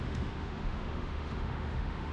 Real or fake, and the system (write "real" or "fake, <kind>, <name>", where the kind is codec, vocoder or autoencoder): fake, autoencoder, DAC-VAE